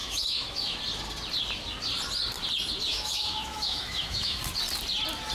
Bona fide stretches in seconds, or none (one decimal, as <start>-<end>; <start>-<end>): 0.8-2.9; 4.4-5.3